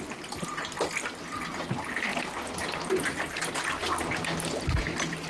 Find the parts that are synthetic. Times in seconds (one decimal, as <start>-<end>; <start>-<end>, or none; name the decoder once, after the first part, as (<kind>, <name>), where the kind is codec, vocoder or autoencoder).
none